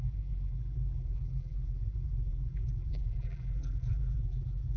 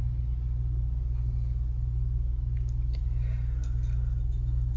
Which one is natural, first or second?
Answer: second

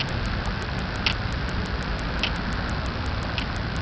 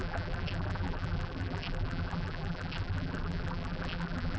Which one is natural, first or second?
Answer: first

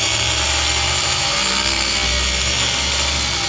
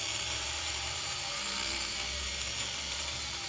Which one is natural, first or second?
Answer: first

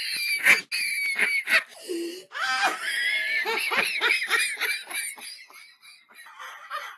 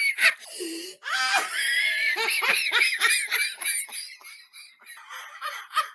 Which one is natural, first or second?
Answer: first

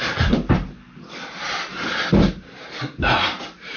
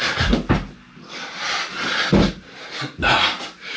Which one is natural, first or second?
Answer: second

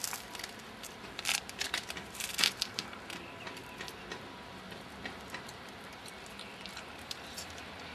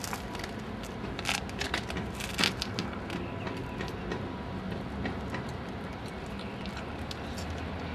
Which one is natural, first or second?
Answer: second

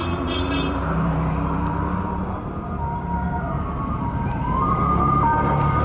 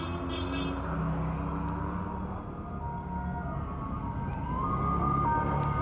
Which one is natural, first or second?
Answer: second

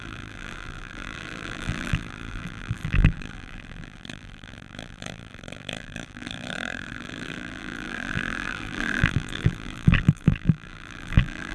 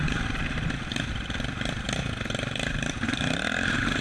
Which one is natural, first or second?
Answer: second